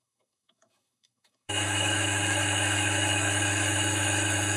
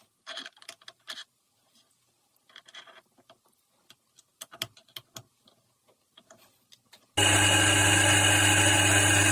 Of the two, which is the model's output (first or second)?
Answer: first